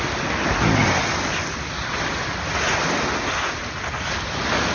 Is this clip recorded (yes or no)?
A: yes